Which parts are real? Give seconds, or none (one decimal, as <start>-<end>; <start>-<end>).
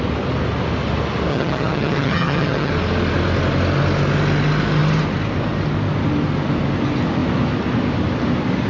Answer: 0.0-1.3; 2.7-8.7